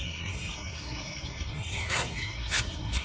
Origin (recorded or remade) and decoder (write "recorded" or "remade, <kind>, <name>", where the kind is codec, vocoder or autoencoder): remade, codec, SNAC